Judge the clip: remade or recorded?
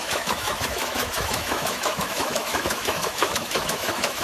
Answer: remade